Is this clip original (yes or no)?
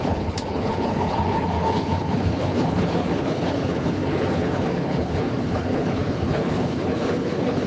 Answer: no